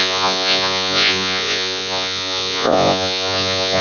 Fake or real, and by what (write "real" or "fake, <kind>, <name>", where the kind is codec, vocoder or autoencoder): fake, vocoder, Vocos